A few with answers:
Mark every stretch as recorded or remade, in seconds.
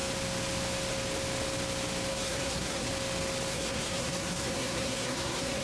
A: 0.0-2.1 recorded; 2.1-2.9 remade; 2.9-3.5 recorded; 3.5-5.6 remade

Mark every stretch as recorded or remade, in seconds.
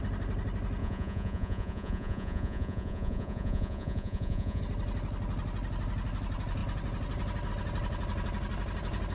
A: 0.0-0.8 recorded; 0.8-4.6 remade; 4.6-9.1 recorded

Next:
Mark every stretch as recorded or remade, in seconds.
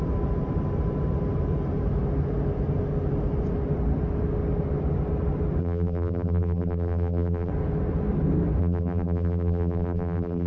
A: 0.0-5.6 recorded; 5.6-7.5 remade; 7.5-8.6 recorded; 8.6-10.5 remade